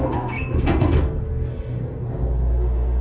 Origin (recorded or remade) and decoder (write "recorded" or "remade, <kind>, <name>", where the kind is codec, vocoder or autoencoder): remade, codec, SNAC